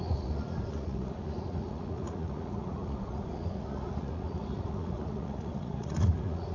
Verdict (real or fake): fake